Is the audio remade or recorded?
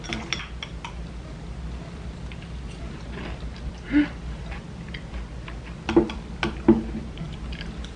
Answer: recorded